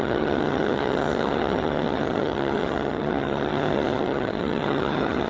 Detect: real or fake fake